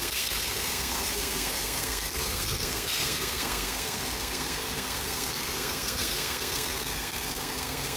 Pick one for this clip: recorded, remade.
remade